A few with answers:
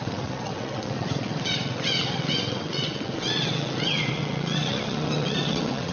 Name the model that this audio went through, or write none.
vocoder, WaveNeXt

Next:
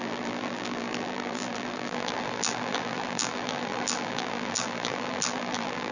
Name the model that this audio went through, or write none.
vocoder, BigVGAN v2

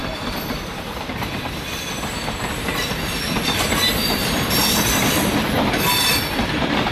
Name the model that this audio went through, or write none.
vocoder, BigVGAN v2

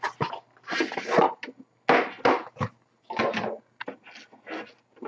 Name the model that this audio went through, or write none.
none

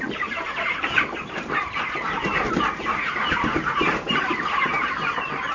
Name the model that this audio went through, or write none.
vocoder, BigVGAN v2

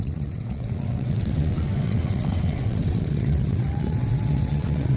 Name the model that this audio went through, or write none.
vocoder, WaveNeXt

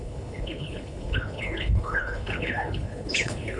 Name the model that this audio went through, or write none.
codec, HILCodec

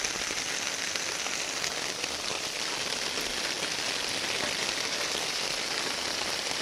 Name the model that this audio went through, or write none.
none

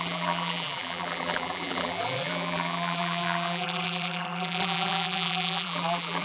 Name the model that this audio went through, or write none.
vocoder, BigVGAN v2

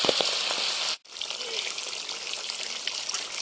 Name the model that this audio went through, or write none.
none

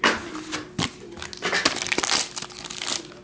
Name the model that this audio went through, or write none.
none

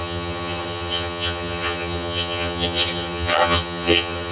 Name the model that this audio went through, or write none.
vocoder, HiFi-GAN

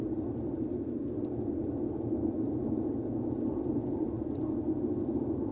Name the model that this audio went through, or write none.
none